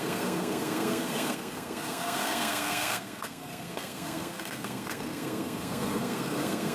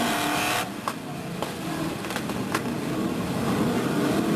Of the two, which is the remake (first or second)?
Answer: first